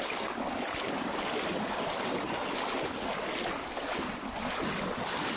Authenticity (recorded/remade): recorded